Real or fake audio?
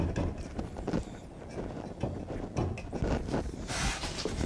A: real